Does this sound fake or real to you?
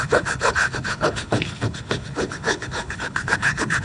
fake